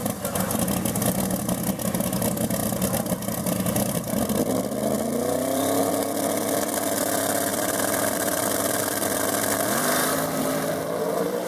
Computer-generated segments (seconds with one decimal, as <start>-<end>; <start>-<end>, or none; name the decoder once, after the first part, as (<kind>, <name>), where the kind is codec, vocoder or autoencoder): 2.6-5.9 (vocoder, BigVGAN v2); 7.5-10.4